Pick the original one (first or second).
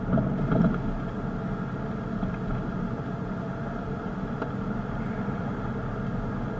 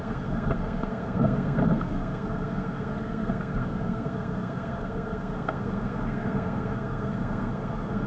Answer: first